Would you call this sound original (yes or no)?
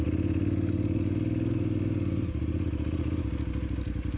yes